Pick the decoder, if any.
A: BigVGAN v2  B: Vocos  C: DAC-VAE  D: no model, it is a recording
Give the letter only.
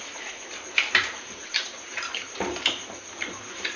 A